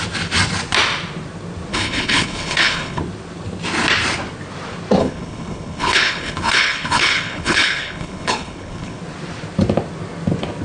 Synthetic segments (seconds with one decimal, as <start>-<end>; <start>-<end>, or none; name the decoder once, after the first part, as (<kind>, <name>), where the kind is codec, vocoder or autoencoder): 1.7-3.0 (codec, HILCodec); 5.0-9.0